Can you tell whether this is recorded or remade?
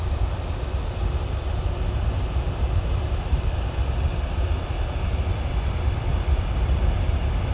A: recorded